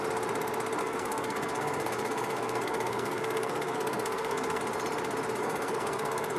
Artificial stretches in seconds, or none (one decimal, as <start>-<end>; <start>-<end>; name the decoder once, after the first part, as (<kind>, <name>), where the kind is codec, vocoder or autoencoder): 0.8-4.6 (codec, SNAC); 5.4-6.4